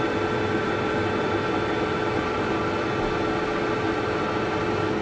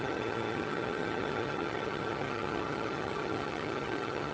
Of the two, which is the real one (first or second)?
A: first